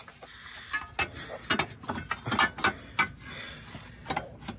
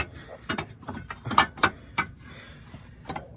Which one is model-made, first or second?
second